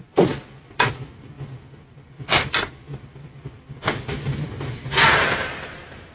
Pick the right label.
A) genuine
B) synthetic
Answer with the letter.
B